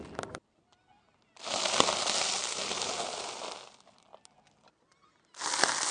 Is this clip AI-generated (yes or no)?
no